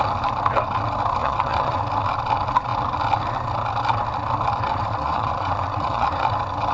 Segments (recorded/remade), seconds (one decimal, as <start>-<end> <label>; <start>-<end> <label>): 0.0-1.2 recorded; 1.2-1.8 remade; 1.8-4.7 recorded; 4.7-6.3 remade; 6.3-6.7 recorded